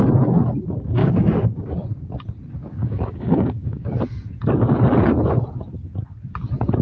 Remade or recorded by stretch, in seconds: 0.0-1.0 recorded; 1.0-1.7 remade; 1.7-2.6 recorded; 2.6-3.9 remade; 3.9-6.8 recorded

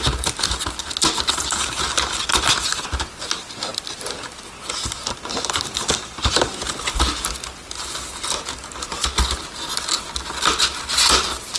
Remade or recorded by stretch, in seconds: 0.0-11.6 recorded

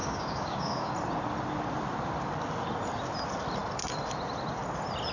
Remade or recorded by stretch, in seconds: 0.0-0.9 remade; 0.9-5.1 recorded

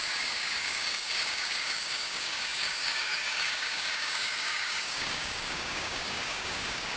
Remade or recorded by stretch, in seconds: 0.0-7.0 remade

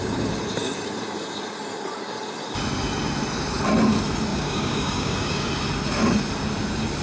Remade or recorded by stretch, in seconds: 0.0-4.3 recorded; 4.3-5.5 remade; 5.5-7.0 recorded

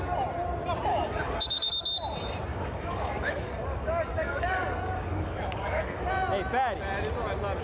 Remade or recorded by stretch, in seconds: 0.0-0.9 recorded; 0.9-1.7 remade; 1.7-2.5 recorded; 2.5-6.1 remade; 6.1-7.6 recorded